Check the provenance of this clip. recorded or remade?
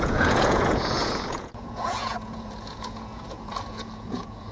remade